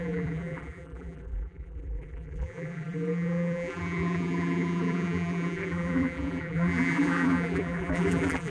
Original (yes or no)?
no